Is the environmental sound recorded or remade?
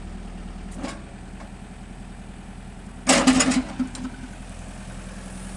recorded